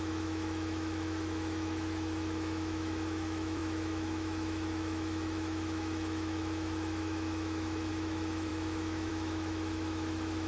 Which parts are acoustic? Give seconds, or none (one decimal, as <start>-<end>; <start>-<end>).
none